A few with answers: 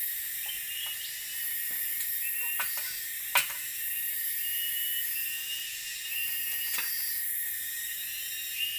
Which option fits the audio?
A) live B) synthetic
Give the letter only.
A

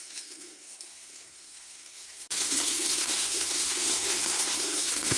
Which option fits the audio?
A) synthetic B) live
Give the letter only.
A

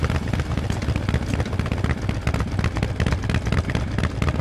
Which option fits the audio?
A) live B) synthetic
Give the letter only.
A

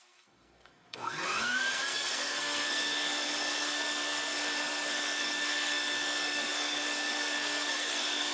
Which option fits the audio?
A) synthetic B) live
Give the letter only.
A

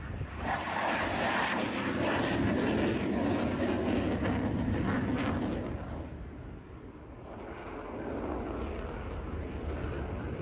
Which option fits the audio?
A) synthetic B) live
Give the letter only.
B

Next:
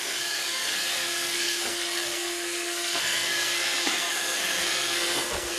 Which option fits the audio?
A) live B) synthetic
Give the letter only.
B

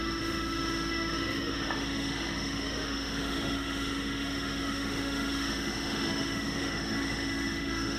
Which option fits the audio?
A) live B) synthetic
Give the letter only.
B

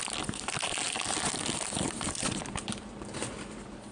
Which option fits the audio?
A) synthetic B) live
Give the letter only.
A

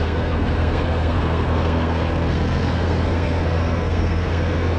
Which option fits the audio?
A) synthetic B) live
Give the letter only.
A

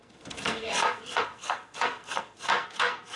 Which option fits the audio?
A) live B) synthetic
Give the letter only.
B